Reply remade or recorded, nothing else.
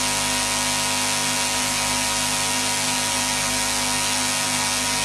recorded